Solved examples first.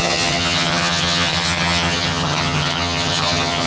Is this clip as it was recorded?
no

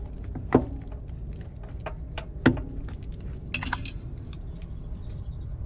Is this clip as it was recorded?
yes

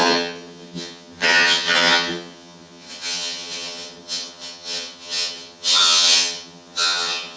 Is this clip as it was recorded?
no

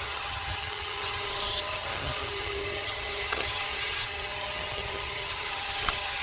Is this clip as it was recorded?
no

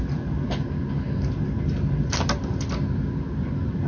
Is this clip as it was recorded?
yes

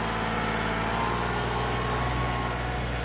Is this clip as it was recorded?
yes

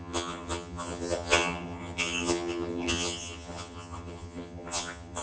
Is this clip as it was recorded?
no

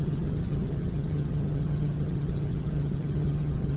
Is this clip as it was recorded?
no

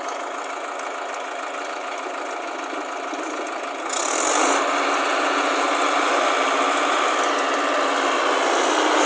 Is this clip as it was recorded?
yes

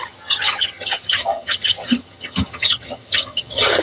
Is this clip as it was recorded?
no